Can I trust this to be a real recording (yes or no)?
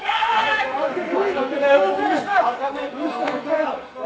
no